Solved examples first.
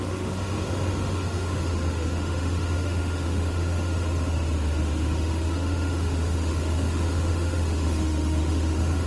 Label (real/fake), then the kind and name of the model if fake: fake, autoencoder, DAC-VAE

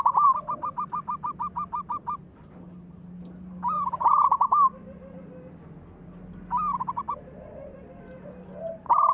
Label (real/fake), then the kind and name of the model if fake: real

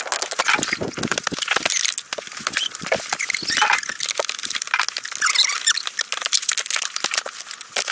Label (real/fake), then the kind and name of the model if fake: real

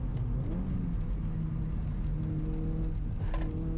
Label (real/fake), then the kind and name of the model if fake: real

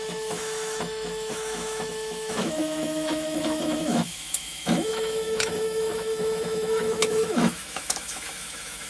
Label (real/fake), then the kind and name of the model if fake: fake, autoencoder, DAC-VAE